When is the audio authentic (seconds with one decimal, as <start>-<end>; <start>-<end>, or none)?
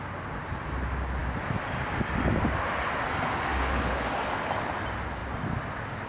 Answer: 0.0-1.2; 2.7-5.2